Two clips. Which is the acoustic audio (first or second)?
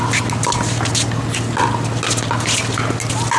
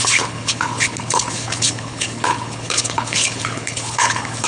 first